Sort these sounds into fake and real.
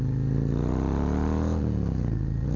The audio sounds real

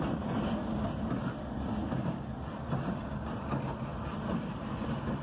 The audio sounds real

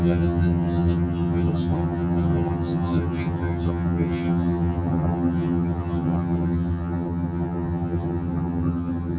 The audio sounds fake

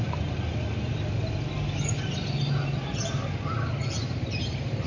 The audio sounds real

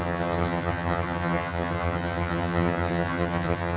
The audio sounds fake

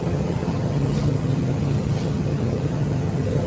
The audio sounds fake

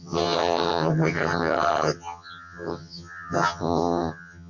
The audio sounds fake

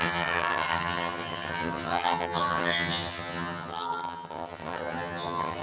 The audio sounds fake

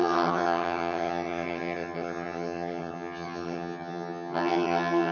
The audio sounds fake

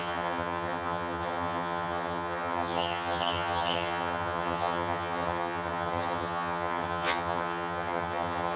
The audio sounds fake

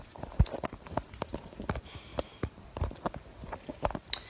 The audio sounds real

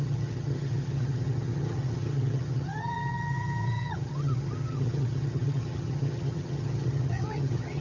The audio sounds fake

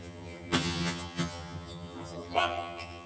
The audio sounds fake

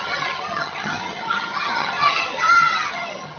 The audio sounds fake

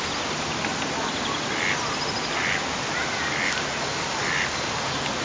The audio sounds real